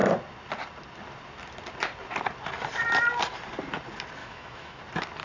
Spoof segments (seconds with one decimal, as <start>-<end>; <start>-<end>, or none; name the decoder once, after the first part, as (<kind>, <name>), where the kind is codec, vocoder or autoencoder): 4.2-4.8 (autoencoder, DAC-VAE)